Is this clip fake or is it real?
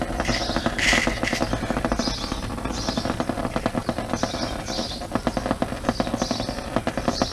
real